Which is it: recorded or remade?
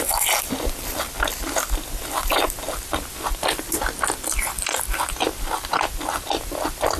recorded